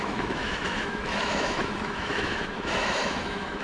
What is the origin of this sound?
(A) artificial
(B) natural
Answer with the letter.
A